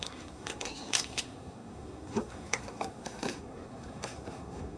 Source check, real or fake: fake